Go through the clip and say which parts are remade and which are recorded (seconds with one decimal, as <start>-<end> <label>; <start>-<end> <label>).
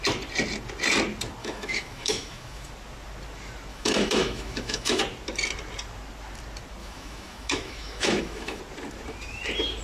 0.0-1.4 recorded; 1.4-2.7 remade; 2.7-3.7 recorded; 3.7-5.0 remade; 5.0-6.8 recorded; 6.8-8.6 remade; 8.6-9.8 recorded